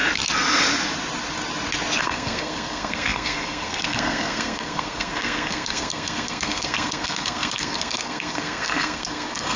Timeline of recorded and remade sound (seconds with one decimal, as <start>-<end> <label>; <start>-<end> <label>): 0.0-2.0 recorded; 2.0-9.6 remade

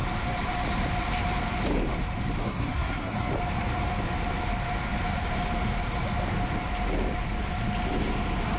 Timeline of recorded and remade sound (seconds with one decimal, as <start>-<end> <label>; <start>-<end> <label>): 0.0-2.4 recorded; 2.4-3.3 remade; 3.3-8.6 recorded

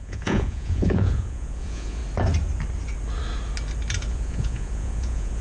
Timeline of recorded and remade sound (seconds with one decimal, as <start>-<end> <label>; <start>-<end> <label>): 0.0-2.0 remade; 2.0-4.1 recorded; 4.1-5.4 remade